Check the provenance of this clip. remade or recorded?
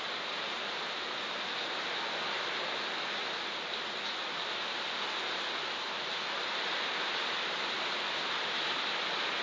recorded